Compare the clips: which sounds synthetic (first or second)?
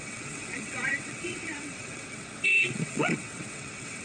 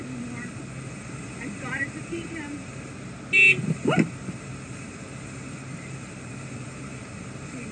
first